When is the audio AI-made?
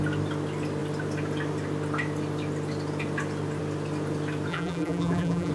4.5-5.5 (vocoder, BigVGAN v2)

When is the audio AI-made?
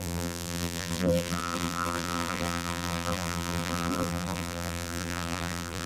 0.0-5.9 (vocoder, BigVGAN v2)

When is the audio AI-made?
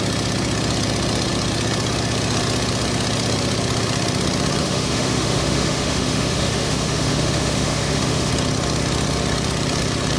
4.6-8.3 (autoencoder, DAC-VAE)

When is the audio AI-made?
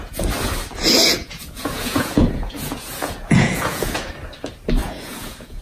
1.2-4.1 (vocoder, Vocos); 4.8-5.6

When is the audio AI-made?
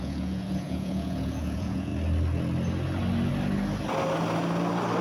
0.0-1.9 (vocoder, Vocos)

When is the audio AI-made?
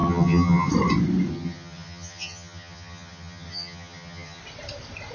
0.0-0.7 (vocoder, HiFi-GAN); 1.3-4.4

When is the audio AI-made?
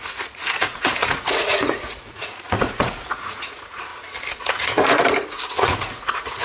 0.0-3.9 (vocoder, Vocos); 4.4-6.4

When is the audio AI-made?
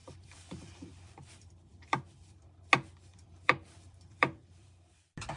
0.0-2.7 (vocoder, BigVGAN v2); 3.1-5.4